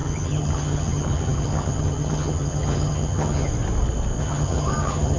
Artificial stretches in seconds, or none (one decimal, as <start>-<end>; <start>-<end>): 0.0-3.5; 4.2-5.2